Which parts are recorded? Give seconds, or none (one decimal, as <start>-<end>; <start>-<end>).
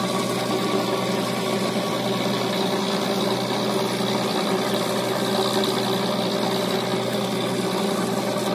0.0-8.5